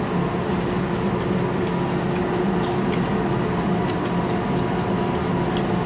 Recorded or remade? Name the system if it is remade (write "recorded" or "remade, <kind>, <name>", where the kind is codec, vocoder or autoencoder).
recorded